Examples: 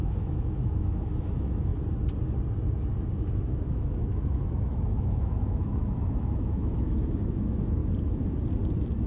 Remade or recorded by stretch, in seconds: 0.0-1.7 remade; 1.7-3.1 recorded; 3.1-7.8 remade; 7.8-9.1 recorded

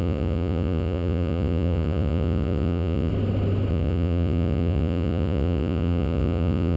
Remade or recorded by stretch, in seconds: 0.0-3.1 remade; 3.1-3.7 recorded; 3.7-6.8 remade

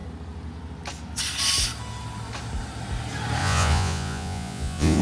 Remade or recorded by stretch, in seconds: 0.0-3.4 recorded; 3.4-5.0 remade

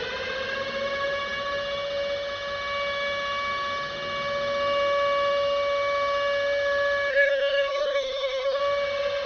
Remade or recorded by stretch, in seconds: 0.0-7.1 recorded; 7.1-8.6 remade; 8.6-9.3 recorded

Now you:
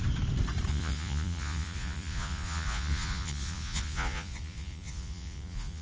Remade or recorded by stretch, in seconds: 0.0-0.7 recorded; 0.7-5.8 remade

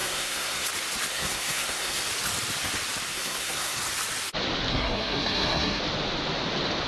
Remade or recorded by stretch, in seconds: 0.0-0.7 remade; 0.7-1.1 recorded; 1.1-2.0 remade; 2.0-3.1 recorded; 3.1-3.8 remade; 3.8-4.7 recorded; 4.7-5.8 remade; 5.8-6.9 recorded

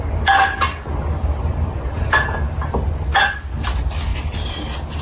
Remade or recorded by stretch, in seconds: 0.0-4.1 recorded; 4.1-5.0 remade